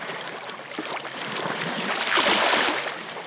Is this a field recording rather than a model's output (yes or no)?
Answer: yes